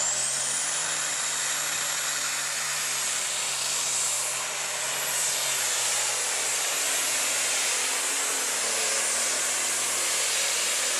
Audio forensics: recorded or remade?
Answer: recorded